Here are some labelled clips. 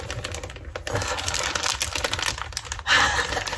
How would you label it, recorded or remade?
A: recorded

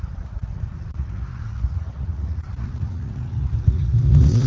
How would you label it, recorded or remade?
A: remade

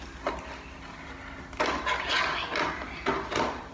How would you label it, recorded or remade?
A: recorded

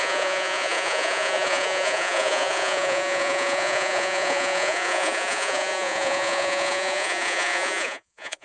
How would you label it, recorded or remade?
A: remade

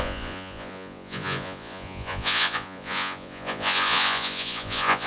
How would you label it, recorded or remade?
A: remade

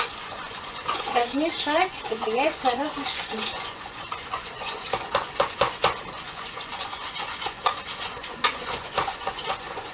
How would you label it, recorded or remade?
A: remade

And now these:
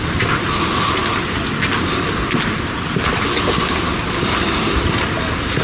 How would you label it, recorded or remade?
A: recorded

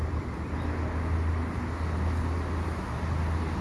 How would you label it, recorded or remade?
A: recorded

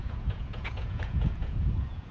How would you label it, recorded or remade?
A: remade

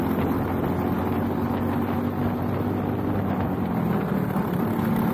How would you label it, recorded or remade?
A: recorded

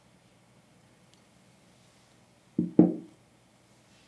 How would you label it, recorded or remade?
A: recorded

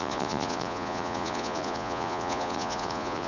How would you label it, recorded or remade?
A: remade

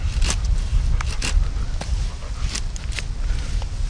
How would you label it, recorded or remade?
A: recorded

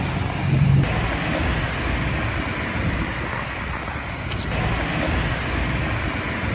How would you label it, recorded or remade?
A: recorded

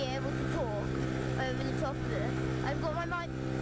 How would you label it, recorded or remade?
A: recorded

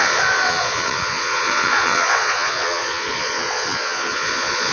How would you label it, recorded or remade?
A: remade